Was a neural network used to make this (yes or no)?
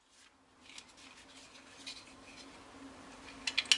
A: no